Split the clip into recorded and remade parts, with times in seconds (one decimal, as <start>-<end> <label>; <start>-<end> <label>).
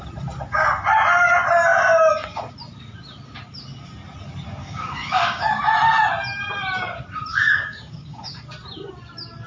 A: 0.0-4.6 recorded; 4.6-5.6 remade; 5.6-7.3 recorded; 7.3-8.4 remade; 8.4-9.5 recorded